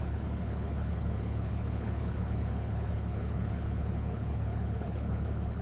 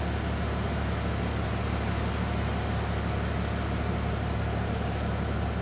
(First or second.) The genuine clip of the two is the second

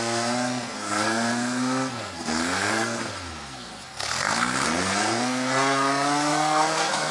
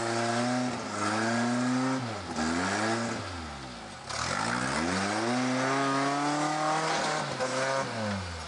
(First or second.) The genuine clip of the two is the second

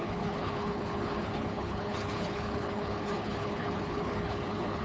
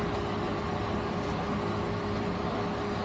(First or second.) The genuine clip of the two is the second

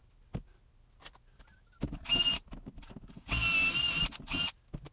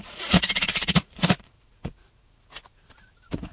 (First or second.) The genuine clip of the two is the first